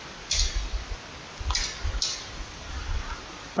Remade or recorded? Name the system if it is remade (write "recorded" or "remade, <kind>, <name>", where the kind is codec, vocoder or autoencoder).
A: recorded